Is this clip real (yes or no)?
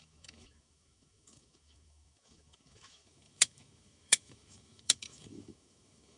no